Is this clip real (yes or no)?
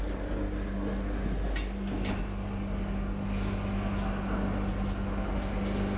yes